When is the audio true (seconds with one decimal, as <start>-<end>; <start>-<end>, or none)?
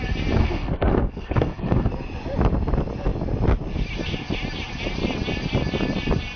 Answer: 0.0-0.4; 1.9-6.4